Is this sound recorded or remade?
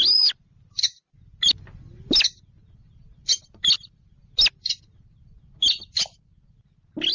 recorded